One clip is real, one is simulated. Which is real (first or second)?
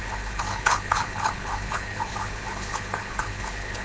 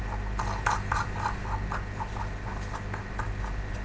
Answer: second